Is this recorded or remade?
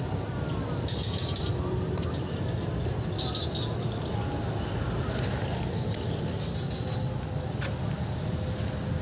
recorded